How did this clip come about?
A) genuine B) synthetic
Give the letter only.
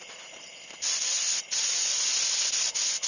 A